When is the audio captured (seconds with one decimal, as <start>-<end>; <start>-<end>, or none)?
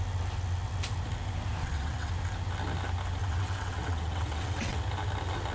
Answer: 0.0-1.6; 2.1-3.2; 4.8-5.5